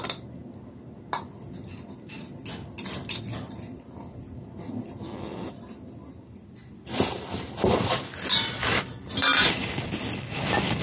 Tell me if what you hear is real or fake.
real